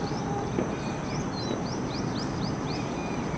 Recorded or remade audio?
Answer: remade